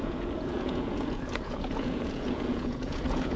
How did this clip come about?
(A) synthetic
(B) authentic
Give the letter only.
A